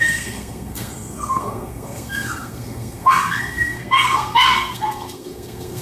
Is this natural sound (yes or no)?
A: no